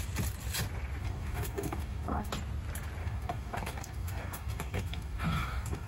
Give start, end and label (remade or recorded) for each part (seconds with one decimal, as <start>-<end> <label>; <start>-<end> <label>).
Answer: 0.0-1.0 recorded; 1.0-2.3 remade; 2.3-3.0 recorded; 3.0-5.9 remade